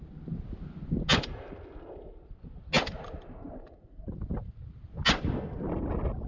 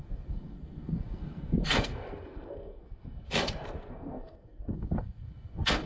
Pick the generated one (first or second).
second